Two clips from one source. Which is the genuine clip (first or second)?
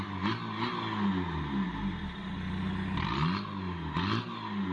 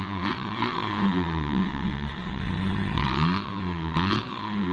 first